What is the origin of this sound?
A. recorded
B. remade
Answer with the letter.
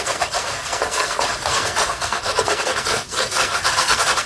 B